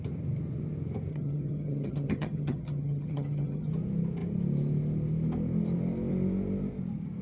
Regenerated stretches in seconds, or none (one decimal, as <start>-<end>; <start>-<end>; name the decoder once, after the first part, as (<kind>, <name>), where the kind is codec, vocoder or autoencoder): 1.1-3.7 (vocoder, HiFi-GAN)

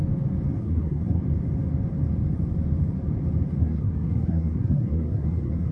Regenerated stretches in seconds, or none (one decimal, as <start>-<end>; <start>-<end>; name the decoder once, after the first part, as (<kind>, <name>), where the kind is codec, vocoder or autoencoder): 0.6-1.2 (codec, SNAC); 3.6-5.7

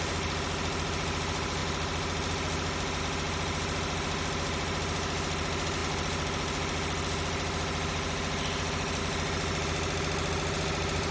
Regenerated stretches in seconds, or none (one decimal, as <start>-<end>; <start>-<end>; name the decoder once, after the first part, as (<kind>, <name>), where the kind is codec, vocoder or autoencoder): none

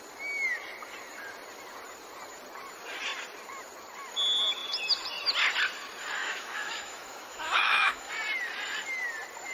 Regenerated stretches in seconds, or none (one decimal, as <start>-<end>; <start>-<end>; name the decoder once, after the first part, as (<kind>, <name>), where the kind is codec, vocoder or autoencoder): 6.2-8.1 (autoencoder, DAC-VAE)

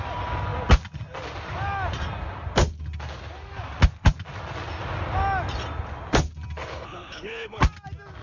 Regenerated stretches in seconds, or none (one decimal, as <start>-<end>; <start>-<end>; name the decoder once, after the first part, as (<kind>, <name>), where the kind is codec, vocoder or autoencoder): 6.6-7.6 (codec, HILCodec)

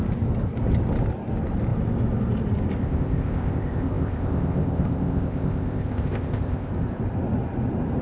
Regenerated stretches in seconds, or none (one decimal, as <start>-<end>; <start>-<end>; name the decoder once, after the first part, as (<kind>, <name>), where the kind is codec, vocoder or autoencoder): 2.8-6.7 (codec, ZipCodec)

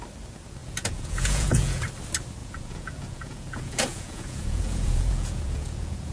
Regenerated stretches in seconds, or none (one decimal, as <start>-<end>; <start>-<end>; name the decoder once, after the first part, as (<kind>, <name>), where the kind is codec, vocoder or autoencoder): 0.6-1.9 (vocoder, Vocos); 2.4-6.1